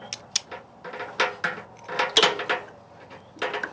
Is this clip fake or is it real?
real